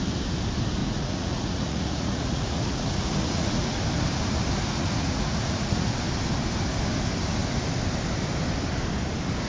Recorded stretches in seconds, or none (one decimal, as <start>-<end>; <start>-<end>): 0.0-0.8; 3.8-4.6; 5.9-9.5